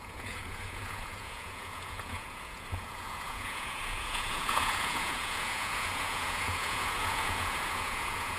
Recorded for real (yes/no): no